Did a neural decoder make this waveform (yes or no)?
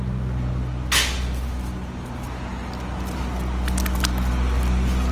no